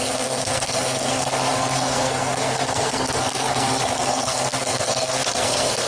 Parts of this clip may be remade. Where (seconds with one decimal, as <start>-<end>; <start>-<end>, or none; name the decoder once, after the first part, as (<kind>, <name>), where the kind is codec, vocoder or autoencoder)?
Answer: 0.0-5.9 (codec, SNAC)